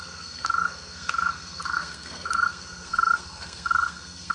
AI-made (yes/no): yes